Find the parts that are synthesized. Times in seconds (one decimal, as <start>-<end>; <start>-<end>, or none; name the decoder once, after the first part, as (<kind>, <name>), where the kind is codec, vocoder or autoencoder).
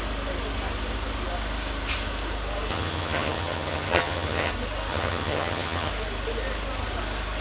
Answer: 2.7-4.5 (vocoder, HiFi-GAN); 4.9-5.9